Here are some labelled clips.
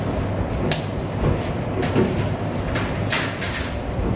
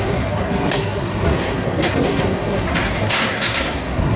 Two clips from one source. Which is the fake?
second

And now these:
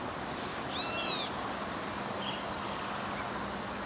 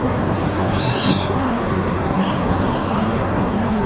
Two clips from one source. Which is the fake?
second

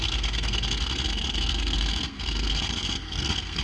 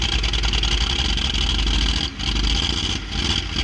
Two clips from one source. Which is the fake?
first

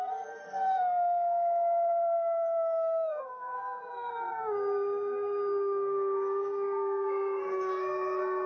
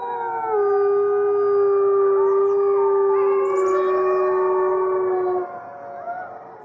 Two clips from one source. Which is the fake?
first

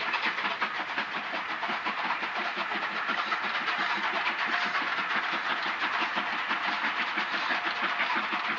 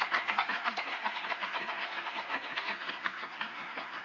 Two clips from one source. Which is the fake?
second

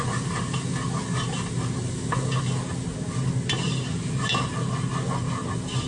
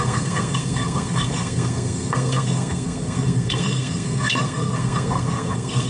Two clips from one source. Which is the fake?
second